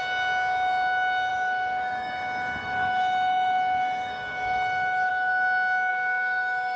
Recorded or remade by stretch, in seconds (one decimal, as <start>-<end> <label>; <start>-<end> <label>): 0.0-1.3 recorded; 1.3-5.1 remade; 5.1-5.9 recorded; 5.9-6.8 remade